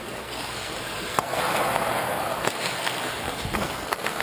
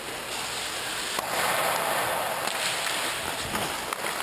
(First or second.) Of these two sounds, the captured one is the second